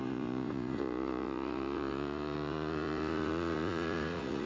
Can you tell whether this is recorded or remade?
remade